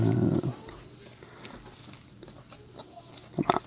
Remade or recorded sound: recorded